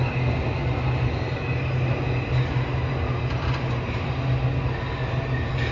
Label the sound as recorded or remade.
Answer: recorded